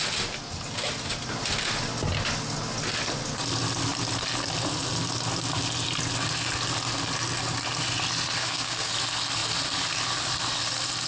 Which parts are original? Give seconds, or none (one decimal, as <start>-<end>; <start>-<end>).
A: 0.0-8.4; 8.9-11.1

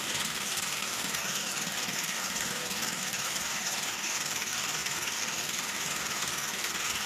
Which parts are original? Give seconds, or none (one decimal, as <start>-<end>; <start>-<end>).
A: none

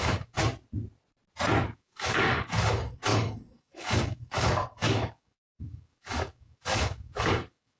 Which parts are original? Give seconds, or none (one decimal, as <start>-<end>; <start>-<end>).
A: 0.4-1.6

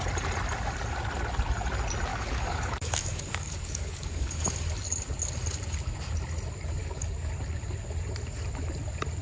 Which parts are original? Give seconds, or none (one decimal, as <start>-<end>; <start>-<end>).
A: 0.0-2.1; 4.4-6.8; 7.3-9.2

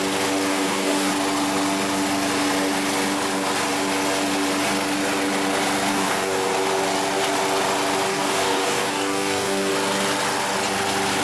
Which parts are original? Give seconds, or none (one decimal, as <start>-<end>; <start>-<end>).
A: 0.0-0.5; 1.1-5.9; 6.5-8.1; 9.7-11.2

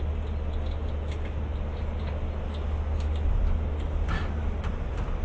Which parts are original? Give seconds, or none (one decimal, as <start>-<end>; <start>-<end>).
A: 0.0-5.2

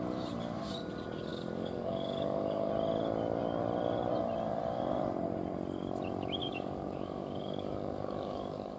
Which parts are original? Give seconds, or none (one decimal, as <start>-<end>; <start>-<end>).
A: 0.0-1.3; 2.7-6.4

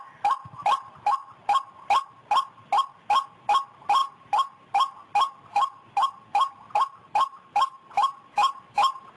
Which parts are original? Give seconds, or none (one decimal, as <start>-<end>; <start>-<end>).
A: 0.0-9.2